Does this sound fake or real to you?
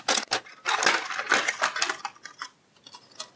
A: real